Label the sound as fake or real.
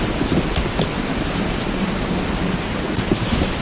real